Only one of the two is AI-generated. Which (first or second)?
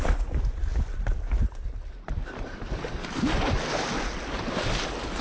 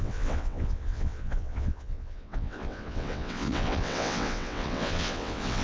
second